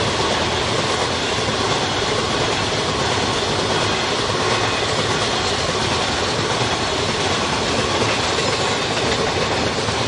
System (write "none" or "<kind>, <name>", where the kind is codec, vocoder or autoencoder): none